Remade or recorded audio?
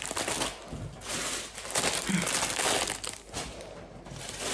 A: recorded